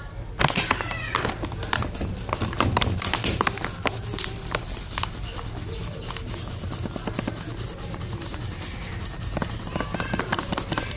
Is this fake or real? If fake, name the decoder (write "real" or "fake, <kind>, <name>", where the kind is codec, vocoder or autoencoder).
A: real